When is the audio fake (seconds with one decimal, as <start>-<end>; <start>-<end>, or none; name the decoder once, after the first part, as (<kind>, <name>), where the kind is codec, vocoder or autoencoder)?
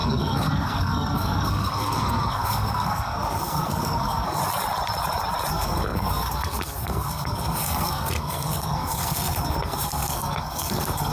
0.0-4.4 (codec, SNAC); 5.5-11.1